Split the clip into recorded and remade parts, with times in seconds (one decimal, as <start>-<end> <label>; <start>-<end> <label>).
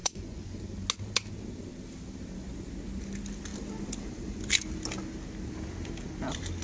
0.0-0.6 remade; 0.6-6.6 recorded